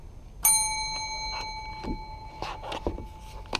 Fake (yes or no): no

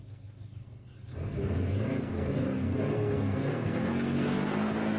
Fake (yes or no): yes